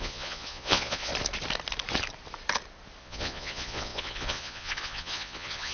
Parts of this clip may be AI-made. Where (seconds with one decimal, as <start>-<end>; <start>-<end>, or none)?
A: 0.0-1.1; 3.0-5.7